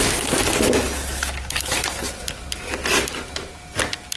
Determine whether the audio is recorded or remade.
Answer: recorded